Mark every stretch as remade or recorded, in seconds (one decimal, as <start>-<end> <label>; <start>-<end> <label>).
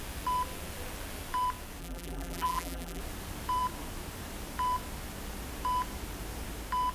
0.0-1.8 recorded; 1.8-3.0 remade; 3.0-6.9 recorded